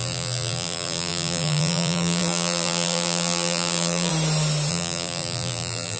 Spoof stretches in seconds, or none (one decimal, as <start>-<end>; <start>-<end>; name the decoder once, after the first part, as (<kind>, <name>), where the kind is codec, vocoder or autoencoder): 0.0-4.1 (vocoder, BigVGAN v2); 4.7-6.0